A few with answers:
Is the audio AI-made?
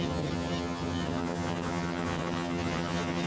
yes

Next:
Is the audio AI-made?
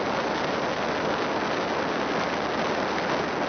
no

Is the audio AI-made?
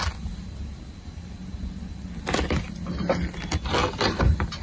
no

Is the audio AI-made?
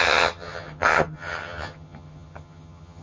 yes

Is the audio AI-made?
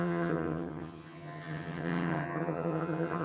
yes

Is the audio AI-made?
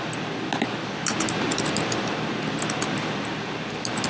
no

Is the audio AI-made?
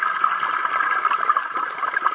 no